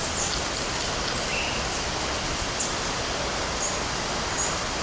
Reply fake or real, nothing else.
real